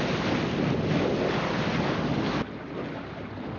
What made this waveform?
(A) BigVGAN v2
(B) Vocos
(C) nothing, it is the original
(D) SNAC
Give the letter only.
C